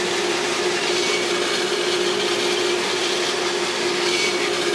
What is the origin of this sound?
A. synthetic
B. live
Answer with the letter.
B